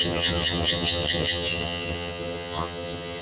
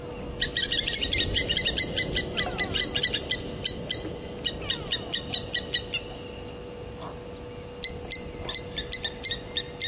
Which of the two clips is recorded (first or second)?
second